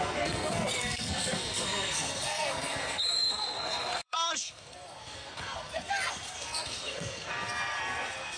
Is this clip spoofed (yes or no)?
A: yes